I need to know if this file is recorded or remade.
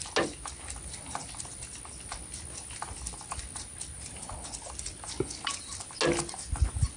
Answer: recorded